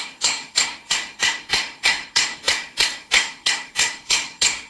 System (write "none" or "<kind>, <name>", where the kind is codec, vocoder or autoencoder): codec, SNAC